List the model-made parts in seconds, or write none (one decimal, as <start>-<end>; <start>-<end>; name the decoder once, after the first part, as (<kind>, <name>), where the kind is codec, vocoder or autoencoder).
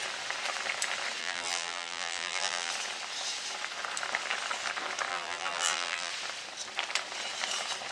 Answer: 1.2-2.7 (vocoder, BigVGAN v2); 5.1-6.1